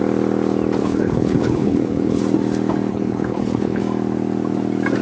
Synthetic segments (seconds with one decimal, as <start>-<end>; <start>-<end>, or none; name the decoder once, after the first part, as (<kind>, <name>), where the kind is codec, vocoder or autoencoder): 0.8-2.2 (codec, HILCodec); 2.9-3.8